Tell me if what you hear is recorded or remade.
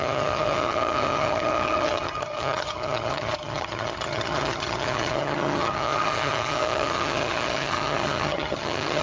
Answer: remade